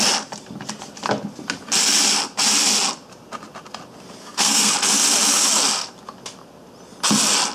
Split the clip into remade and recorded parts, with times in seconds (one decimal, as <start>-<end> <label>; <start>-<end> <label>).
0.0-4.2 recorded; 4.2-4.7 remade; 4.7-7.5 recorded